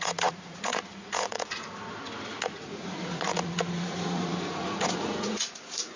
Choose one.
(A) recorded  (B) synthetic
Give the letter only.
B